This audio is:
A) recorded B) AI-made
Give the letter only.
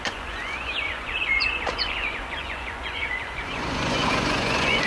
B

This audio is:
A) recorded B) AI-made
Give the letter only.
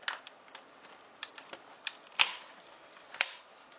A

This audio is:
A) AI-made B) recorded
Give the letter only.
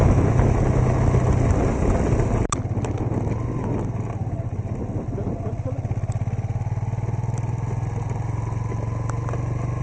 B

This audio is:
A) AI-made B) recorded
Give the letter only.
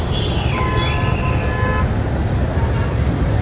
B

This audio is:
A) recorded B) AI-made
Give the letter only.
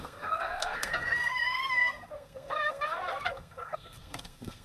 B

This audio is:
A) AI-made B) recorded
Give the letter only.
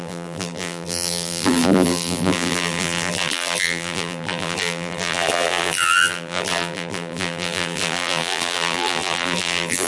A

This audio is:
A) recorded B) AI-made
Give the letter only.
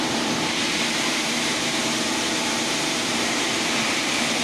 B